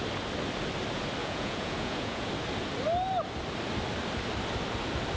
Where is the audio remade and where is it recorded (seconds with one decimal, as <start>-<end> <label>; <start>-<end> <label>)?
0.0-1.2 recorded; 1.2-2.3 remade; 2.3-5.2 recorded